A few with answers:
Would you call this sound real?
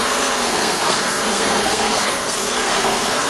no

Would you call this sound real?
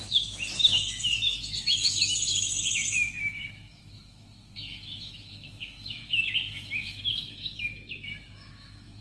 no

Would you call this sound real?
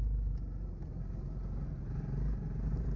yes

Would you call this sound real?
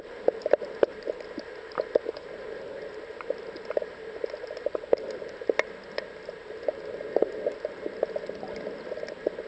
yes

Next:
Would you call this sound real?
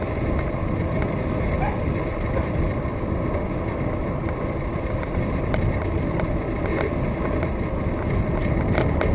yes